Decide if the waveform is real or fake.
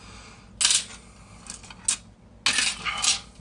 real